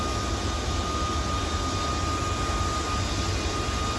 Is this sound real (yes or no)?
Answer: yes